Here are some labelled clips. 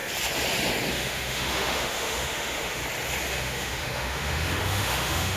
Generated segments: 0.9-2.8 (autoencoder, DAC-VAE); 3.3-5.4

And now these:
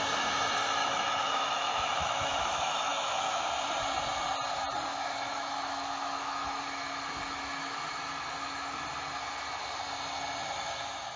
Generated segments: 0.8-3.4 (autoencoder, DAC-VAE); 4.9-8.0